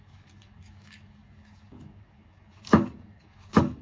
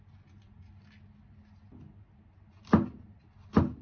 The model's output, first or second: first